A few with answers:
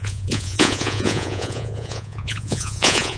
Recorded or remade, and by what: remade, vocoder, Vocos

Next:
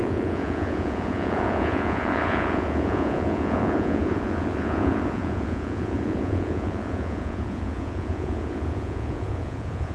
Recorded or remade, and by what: remade, vocoder, Vocos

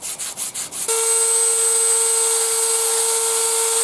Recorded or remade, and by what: recorded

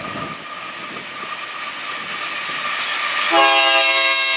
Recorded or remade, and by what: recorded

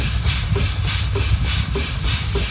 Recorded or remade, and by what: recorded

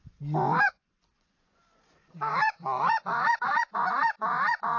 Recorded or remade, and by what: remade, vocoder, Vocos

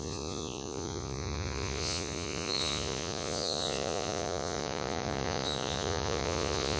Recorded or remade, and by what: remade, vocoder, Vocos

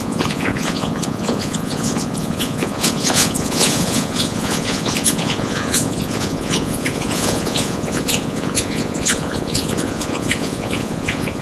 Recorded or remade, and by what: remade, vocoder, Vocos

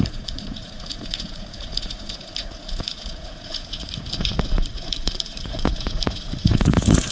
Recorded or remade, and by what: remade, vocoder, Vocos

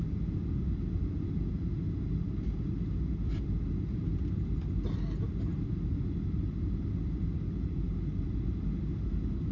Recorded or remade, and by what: recorded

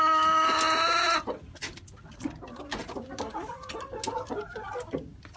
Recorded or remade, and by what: recorded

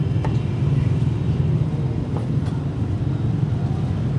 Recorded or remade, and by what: recorded